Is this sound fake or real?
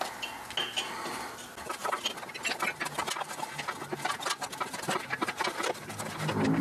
real